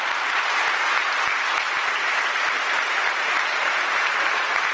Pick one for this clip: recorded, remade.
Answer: remade